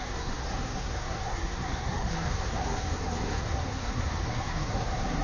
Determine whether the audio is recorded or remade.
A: remade